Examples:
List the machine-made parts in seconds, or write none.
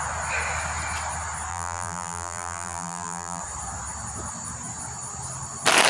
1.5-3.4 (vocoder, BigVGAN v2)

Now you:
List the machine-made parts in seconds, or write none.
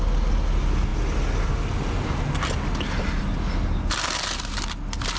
none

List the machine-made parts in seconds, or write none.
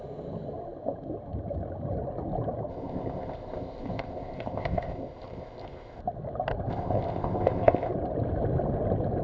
2.7-6.0 (codec, ZipCodec); 6.7-7.9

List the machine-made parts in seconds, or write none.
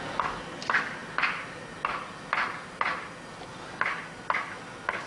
none